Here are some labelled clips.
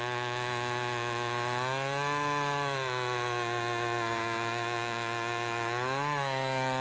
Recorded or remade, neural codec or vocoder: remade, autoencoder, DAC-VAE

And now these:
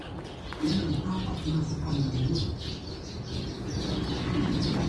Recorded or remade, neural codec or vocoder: recorded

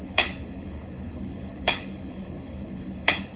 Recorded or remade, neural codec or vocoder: remade, codec, HILCodec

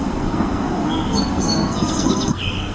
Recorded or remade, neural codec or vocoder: remade, codec, SNAC